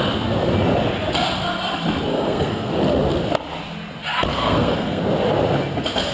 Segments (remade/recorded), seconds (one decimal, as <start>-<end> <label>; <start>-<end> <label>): 0.0-2.1 recorded; 2.1-2.7 remade; 2.7-4.3 recorded; 4.3-5.0 remade; 5.0-6.1 recorded